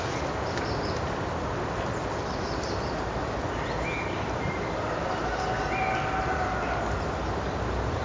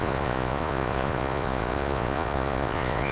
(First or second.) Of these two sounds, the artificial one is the second